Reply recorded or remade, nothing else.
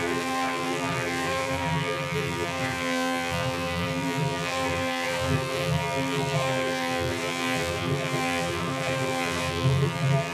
remade